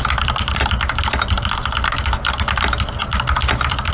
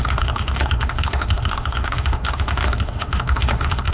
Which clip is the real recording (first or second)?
first